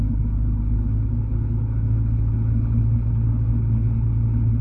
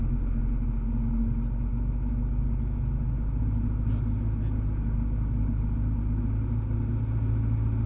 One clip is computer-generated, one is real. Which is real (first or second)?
second